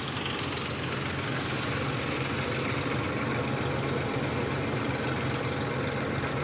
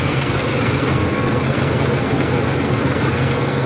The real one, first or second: first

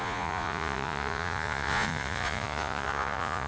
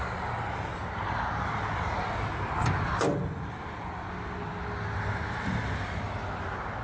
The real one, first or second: second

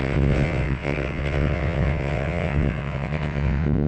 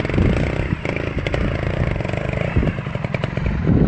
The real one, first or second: second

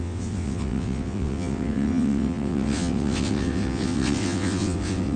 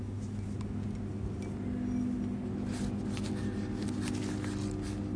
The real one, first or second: second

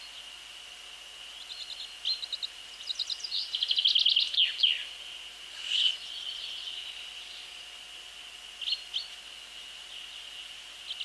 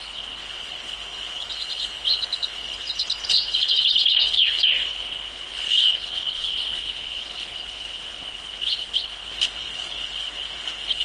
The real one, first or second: first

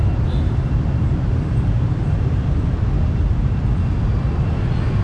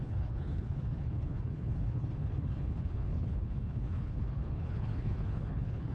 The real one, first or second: first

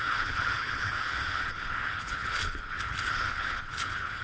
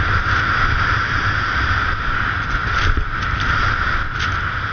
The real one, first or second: second